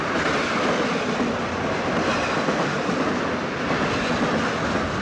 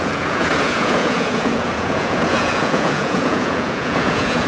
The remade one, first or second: second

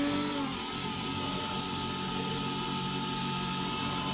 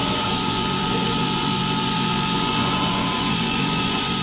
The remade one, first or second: second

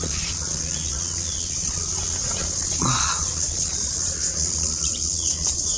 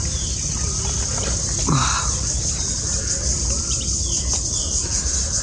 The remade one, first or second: first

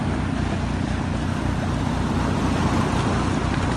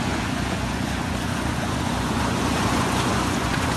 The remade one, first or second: second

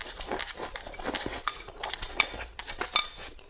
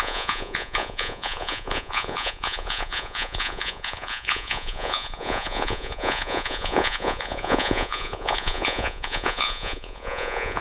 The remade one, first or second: second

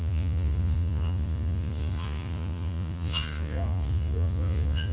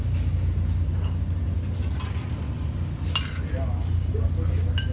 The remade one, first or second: first